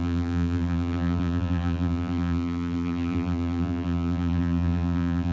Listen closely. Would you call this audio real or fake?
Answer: fake